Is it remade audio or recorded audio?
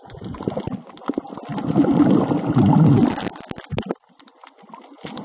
recorded